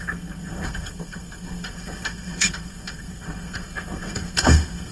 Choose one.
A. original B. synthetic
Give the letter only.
B